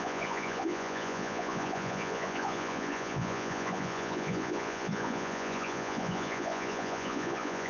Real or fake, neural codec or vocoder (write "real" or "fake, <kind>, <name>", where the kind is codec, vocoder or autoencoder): fake, vocoder, Vocos